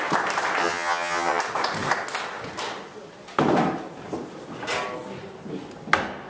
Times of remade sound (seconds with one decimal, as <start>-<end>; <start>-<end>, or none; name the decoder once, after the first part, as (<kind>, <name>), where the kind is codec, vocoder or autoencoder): 0.6-1.4 (vocoder, HiFi-GAN)